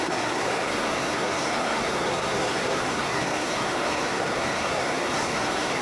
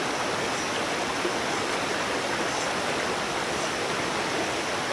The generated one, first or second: first